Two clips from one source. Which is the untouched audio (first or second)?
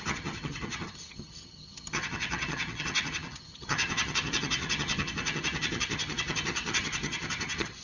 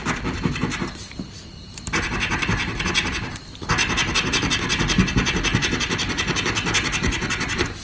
second